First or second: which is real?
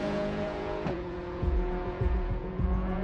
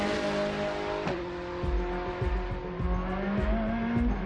second